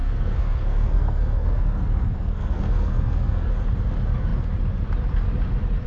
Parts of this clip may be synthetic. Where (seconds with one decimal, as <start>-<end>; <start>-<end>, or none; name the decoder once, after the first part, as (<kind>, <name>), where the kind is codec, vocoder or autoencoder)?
0.0-3.5 (codec, SNAC)